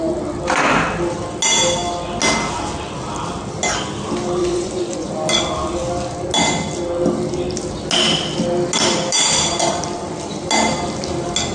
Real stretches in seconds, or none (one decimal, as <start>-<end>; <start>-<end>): 0.0-4.4; 5.1-11.5